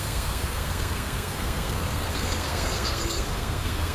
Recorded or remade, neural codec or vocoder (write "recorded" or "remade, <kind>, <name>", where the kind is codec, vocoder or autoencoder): remade, codec, SNAC